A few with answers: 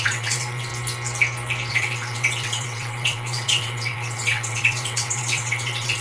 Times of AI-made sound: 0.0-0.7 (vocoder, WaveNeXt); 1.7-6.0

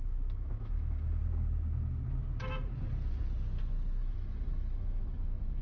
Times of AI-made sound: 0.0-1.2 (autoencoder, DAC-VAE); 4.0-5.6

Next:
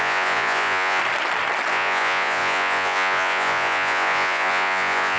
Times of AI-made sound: 0.0-1.0 (vocoder, Vocos); 1.7-5.2

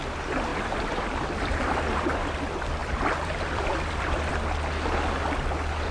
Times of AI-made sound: 0.5-2.2 (vocoder, BigVGAN v2); 2.8-4.3

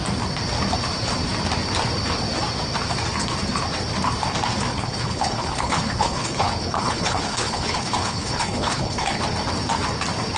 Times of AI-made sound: 4.7-9.2 (codec, HILCodec)